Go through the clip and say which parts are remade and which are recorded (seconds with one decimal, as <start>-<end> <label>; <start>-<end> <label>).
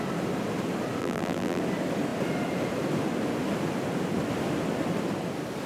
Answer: 0.0-1.0 recorded; 1.0-1.6 remade; 1.6-5.7 recorded